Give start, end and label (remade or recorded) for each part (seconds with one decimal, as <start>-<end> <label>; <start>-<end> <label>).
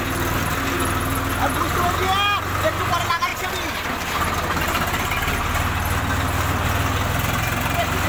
0.0-8.1 recorded